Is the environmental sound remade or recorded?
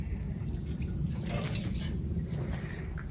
recorded